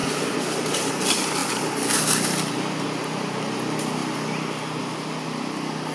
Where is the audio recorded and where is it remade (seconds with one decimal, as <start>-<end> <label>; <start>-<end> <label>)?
0.0-5.9 recorded